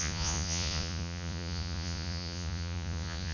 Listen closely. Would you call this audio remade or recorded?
remade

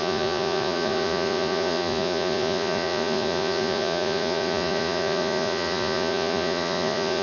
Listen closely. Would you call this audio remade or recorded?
remade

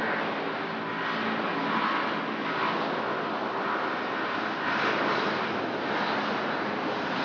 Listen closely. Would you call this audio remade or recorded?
recorded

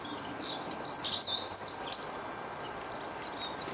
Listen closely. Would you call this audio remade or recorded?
recorded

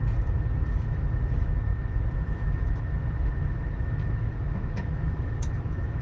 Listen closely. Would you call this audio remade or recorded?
remade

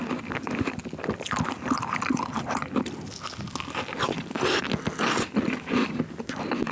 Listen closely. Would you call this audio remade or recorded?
recorded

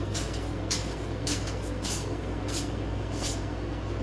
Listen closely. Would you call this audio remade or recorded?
remade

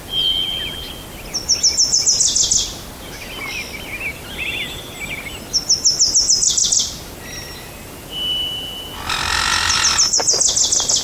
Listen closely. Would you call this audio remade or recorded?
recorded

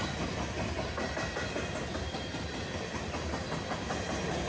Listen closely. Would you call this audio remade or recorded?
recorded